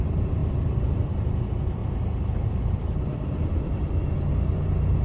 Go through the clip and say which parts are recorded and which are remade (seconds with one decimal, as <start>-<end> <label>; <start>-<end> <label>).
0.0-1.8 remade; 1.8-2.7 recorded; 2.7-3.8 remade; 3.8-4.3 recorded; 4.3-5.0 remade